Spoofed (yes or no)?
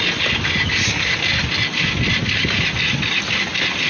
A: no